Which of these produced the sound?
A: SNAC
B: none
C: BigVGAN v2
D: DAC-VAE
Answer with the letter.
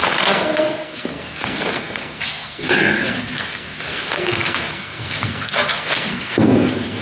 A